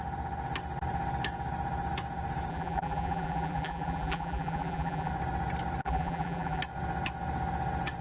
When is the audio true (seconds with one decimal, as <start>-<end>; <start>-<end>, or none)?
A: 0.0-2.5; 5.1-5.8; 6.6-8.0

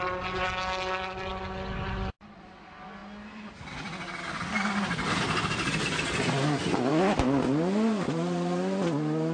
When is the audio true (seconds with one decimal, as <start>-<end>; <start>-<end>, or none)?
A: 0.0-9.3

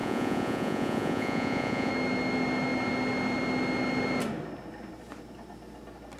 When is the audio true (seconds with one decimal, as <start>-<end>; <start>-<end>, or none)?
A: 1.9-6.2

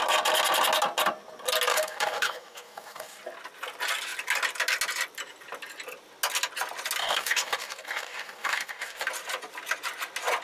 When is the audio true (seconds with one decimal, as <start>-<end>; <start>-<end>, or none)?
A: 0.0-1.7; 3.2-7.0; 9.1-10.4

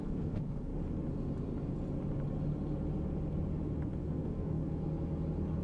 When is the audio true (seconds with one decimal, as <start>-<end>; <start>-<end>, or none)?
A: 0.7-4.0; 4.6-5.6

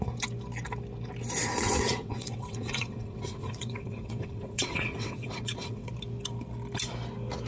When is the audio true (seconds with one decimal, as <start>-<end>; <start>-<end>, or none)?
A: 0.0-1.4; 5.9-7.5

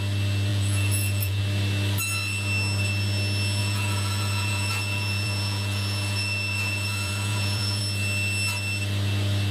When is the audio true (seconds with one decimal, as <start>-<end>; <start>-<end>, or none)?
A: 0.0-0.5; 1.4-3.6; 7.8-9.5

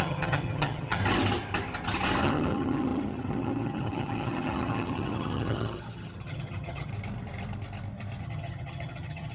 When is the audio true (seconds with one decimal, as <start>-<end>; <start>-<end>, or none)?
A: 1.0-2.2; 6.9-8.2